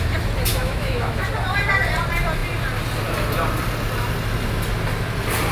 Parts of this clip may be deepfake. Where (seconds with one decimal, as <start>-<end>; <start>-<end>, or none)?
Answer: 0.5-1.2